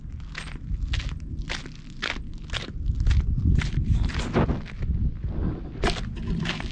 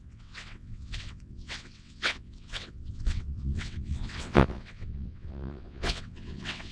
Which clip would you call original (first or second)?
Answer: first